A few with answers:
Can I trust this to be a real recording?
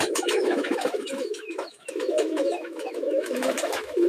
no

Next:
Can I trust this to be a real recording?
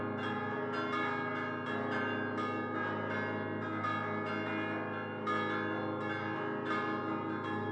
yes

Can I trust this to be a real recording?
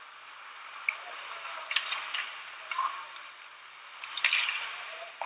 no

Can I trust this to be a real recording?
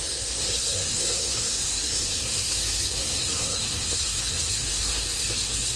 no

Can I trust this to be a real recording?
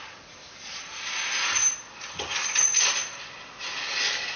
yes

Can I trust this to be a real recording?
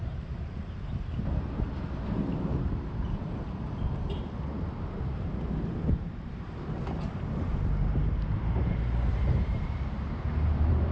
no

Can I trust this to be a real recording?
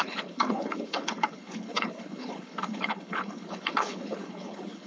no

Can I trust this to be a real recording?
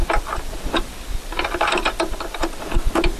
no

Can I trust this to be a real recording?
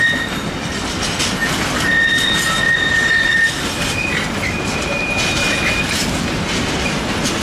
yes